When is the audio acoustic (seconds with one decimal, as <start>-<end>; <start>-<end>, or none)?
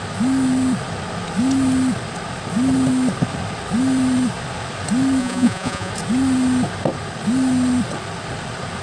0.0-5.2; 5.9-8.8